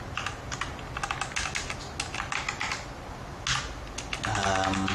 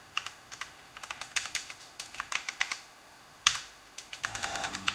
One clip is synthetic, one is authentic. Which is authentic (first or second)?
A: first